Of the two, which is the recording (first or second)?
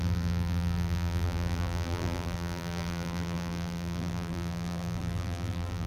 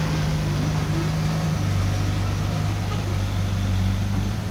second